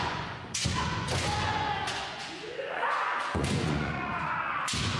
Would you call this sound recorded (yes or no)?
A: no